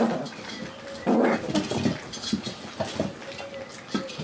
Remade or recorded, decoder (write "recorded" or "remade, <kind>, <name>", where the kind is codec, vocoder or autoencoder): recorded